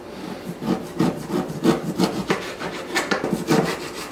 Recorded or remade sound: recorded